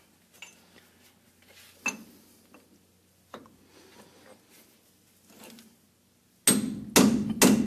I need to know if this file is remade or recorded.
recorded